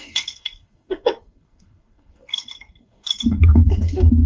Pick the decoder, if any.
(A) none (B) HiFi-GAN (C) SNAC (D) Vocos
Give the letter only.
C